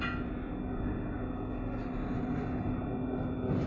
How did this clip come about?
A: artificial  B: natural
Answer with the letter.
B